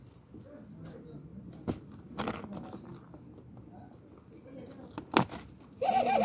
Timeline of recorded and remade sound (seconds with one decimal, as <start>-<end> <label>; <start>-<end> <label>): 0.0-6.2 recorded